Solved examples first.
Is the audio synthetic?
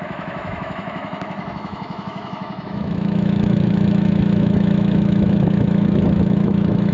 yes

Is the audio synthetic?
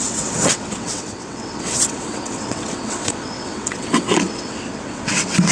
yes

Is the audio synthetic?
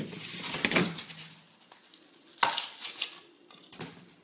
no